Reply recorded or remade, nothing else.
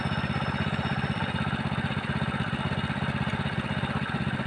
recorded